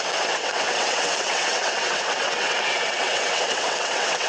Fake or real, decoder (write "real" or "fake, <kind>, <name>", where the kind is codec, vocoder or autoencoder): fake, vocoder, WaveNeXt